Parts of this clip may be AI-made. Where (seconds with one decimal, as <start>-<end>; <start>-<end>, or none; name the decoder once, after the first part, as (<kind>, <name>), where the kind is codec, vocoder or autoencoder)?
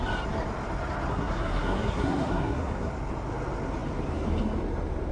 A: 1.1-2.9 (codec, SNAC)